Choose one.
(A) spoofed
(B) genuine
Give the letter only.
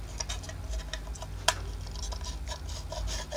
B